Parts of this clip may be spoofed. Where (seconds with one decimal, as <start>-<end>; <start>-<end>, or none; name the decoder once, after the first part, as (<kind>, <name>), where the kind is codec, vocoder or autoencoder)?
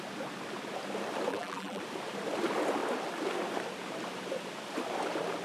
1.3-1.8 (vocoder, BigVGAN v2)